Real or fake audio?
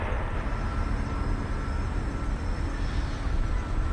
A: real